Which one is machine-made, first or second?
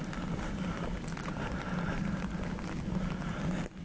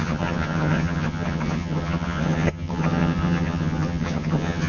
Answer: second